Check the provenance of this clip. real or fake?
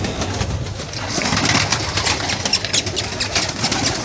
real